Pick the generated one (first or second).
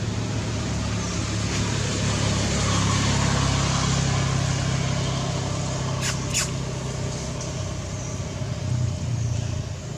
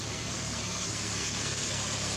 second